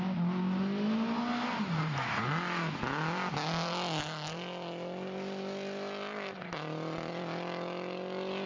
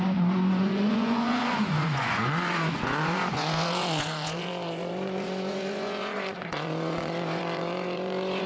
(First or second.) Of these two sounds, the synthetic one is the second